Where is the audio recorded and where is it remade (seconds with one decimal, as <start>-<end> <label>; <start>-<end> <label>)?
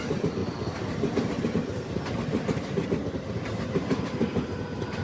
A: 0.0-5.0 recorded